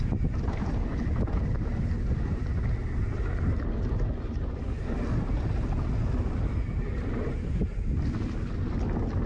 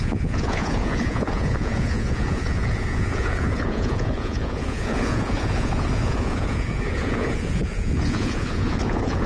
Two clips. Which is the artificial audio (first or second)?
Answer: second